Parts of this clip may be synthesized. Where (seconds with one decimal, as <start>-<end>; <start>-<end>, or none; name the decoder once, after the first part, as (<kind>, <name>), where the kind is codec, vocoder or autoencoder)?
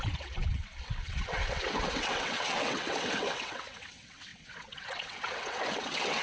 0.0-6.2 (vocoder, WaveNeXt)